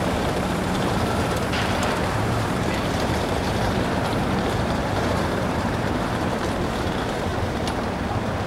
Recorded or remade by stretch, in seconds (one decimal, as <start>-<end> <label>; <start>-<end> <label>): 0.0-7.3 remade; 7.3-8.1 recorded; 8.1-8.5 remade